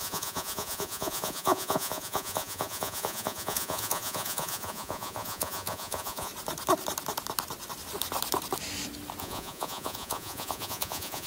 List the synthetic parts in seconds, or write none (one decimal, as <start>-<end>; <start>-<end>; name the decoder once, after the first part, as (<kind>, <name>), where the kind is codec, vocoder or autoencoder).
0.0-6.3 (vocoder, Vocos); 9.2-11.3